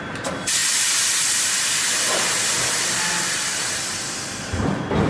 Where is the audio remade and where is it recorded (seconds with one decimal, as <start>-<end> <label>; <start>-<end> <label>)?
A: 0.0-5.1 recorded